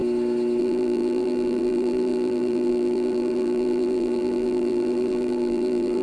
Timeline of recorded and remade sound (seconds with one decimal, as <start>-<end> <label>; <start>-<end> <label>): 0.0-0.6 recorded; 0.6-6.0 remade